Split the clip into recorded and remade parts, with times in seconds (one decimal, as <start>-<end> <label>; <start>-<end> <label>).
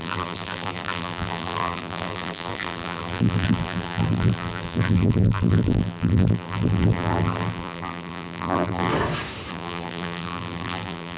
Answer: 0.0-8.9 remade; 8.9-9.5 recorded; 9.5-11.2 remade